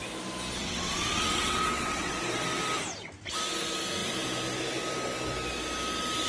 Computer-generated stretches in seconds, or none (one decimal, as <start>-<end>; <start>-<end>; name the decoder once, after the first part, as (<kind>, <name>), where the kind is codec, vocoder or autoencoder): 0.6-2.1 (vocoder, WaveNeXt)